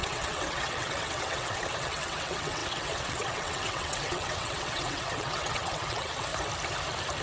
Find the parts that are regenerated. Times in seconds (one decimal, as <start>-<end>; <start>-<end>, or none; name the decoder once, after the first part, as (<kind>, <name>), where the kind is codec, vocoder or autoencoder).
0.0-6.3 (vocoder, WaveNeXt)